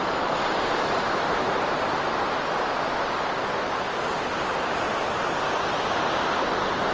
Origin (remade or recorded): recorded